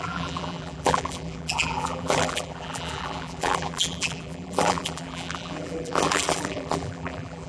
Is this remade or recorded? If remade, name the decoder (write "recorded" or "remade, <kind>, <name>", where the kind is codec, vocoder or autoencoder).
remade, vocoder, BigVGAN v2